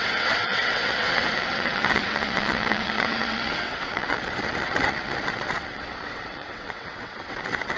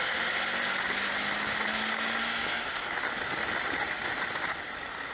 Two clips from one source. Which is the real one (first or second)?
second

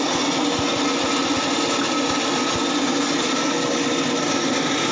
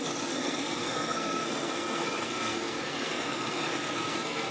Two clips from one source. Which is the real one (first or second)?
first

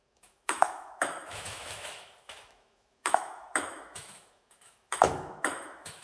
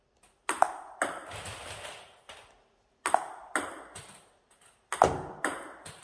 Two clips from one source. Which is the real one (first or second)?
second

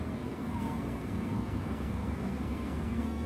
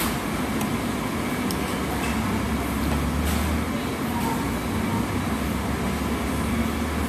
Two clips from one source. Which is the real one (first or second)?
second